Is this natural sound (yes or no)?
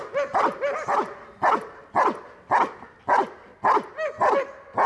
yes